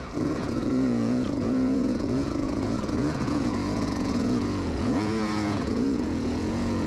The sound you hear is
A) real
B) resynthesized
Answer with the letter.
B